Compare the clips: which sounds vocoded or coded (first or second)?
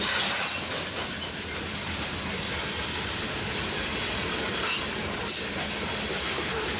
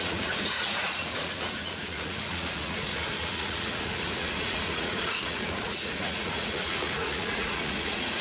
second